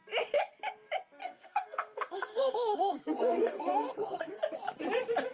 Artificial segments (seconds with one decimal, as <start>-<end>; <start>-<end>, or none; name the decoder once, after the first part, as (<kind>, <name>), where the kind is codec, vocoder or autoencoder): 1.2-4.4 (codec, SNAC)